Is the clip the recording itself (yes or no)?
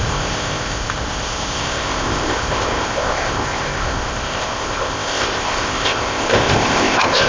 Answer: no